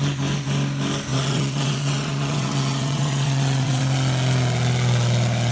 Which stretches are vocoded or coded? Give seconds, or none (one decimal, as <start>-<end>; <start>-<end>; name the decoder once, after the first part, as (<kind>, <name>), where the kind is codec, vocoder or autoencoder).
1.1-3.8 (vocoder, WaveNeXt)